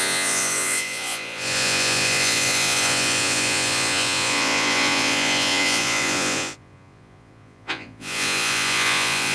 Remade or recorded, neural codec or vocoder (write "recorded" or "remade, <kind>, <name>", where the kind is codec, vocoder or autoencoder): remade, vocoder, Vocos